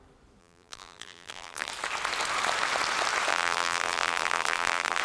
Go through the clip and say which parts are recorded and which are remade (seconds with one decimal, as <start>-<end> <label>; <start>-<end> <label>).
0.0-0.4 recorded; 0.4-1.7 remade; 1.7-3.3 recorded; 3.3-5.0 remade